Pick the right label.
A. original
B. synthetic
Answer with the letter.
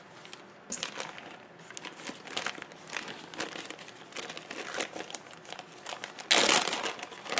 A